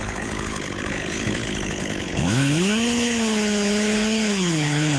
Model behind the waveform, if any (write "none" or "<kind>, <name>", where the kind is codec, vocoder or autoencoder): codec, HILCodec